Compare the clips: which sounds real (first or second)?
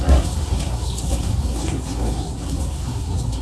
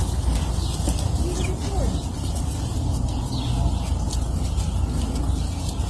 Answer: second